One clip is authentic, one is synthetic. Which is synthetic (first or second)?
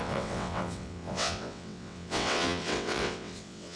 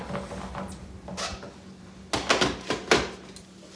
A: first